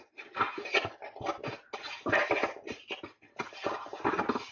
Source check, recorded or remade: recorded